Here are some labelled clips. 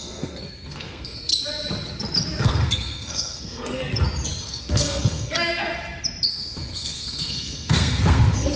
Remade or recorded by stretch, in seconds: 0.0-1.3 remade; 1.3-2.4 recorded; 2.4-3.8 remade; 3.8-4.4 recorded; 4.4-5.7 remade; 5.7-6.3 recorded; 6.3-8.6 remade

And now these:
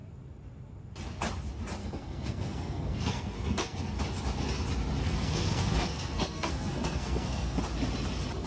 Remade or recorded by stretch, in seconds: 0.0-1.8 recorded; 1.8-4.0 remade; 4.0-5.0 recorded; 5.0-7.6 remade; 7.6-8.5 recorded

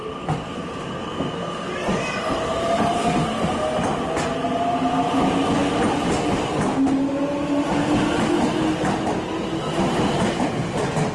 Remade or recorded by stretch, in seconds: 0.0-1.0 recorded; 1.0-1.7 remade; 1.7-11.1 recorded

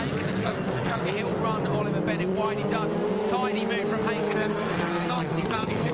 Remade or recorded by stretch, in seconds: 0.0-0.4 recorded; 0.4-1.0 remade; 1.0-4.2 recorded; 4.2-5.9 remade

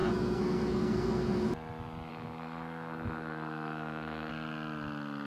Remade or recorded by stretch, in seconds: 0.0-1.5 remade; 1.5-2.1 recorded; 2.1-4.3 remade; 4.3-5.3 recorded

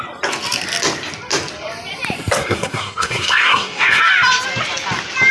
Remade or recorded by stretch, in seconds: 0.0-2.4 recorded; 2.4-4.0 remade; 4.0-5.3 recorded

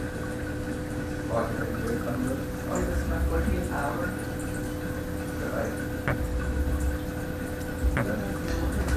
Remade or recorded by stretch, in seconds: 0.0-9.0 recorded

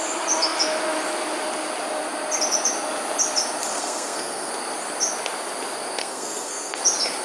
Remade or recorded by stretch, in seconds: 0.0-3.7 recorded; 3.7-4.5 remade; 4.5-6.0 recorded; 6.0-6.8 remade; 6.8-7.2 recorded